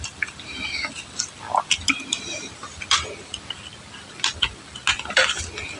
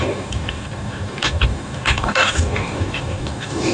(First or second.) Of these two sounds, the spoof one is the second